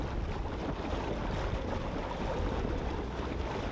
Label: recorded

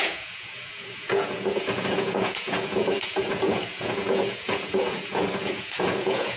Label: remade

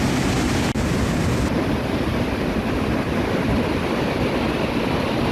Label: recorded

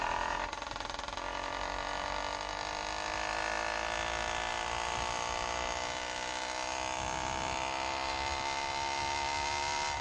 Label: recorded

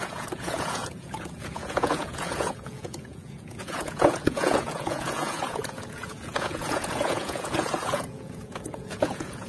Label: remade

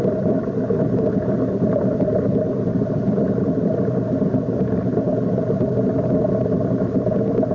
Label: remade